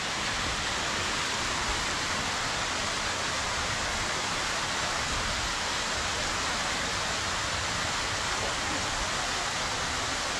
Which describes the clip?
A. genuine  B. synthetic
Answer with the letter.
A